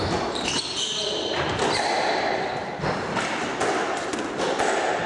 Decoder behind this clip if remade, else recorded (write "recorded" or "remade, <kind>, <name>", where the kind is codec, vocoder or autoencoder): recorded